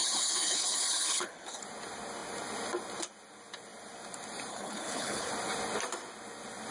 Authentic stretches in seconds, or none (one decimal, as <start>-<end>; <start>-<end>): 1.6-4.5; 5.3-6.7